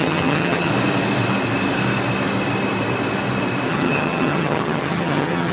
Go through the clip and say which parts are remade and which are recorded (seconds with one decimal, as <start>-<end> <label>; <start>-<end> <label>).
0.0-0.7 remade; 0.7-3.7 recorded; 3.7-5.5 remade